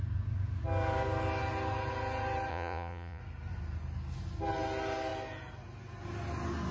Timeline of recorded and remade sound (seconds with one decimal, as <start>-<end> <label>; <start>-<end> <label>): 0.0-2.5 recorded; 2.5-3.2 remade; 3.2-6.7 recorded